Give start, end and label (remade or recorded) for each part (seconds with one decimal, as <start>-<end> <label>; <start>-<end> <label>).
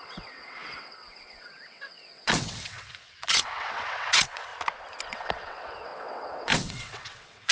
0.0-4.5 remade; 4.5-5.0 recorded; 5.0-7.5 remade